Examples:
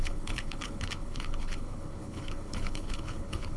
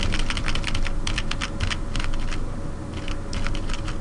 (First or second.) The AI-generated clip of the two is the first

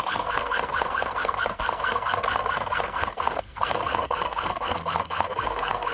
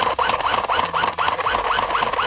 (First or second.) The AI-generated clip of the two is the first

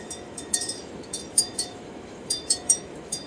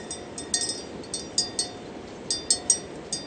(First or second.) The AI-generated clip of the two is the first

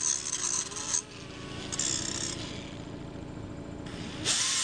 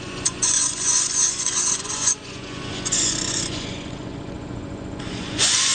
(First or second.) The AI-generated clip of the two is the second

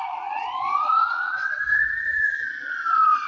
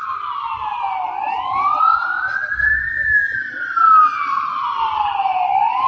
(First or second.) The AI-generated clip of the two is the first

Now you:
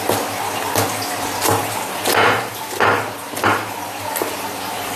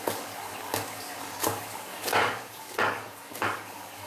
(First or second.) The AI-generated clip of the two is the second